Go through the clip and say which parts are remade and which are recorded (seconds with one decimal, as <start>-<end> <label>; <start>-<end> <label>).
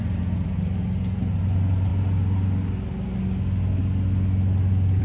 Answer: 0.0-5.0 recorded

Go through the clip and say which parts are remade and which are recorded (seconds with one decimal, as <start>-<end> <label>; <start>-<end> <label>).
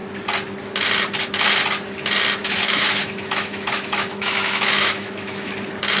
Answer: 0.0-2.4 recorded; 2.4-5.5 remade; 5.5-6.0 recorded